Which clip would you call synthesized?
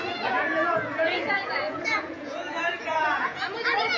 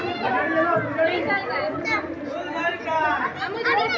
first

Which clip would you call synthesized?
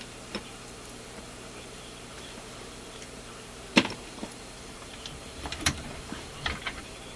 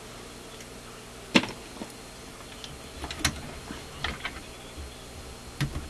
first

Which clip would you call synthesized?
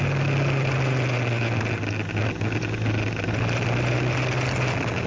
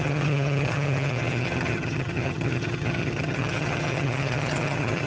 second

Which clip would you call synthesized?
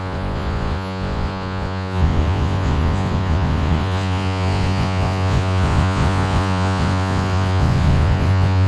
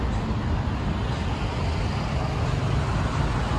first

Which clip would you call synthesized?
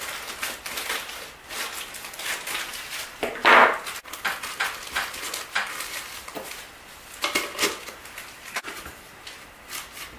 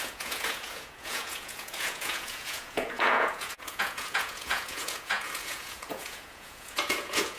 second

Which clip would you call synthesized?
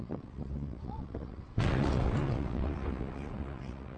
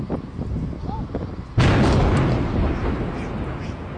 first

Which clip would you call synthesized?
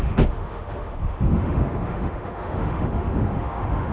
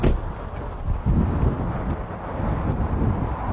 first